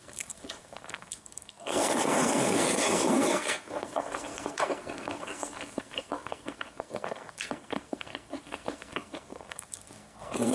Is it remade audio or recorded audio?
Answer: remade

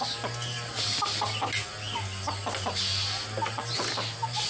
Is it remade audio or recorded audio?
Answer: recorded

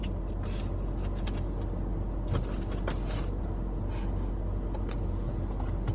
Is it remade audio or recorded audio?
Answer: recorded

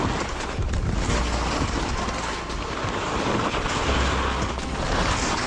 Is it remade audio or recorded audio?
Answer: recorded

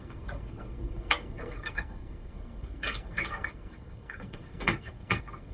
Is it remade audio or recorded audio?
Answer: remade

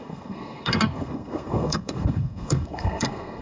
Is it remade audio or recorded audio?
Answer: remade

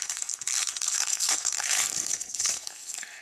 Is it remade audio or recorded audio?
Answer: remade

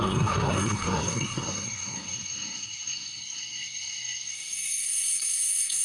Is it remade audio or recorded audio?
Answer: remade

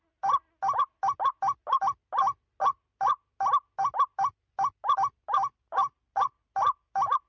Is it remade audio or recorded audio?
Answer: recorded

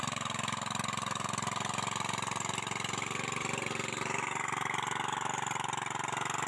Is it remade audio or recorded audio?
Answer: recorded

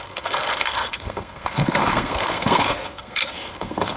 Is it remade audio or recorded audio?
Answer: remade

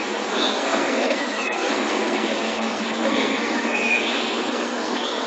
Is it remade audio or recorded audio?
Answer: remade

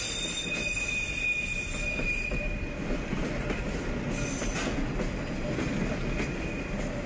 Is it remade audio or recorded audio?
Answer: recorded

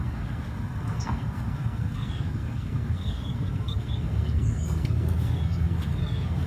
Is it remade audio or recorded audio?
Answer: remade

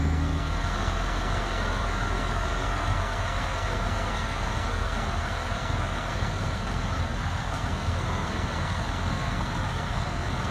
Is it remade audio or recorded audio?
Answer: remade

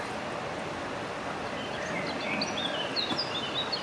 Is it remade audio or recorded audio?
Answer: recorded